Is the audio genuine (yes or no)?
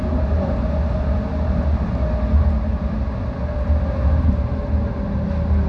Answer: yes